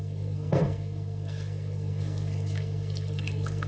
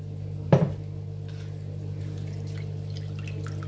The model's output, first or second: first